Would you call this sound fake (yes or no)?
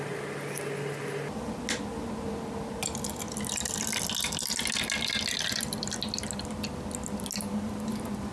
no